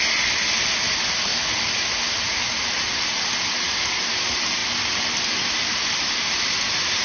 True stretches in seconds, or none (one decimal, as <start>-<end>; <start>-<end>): 0.0-7.0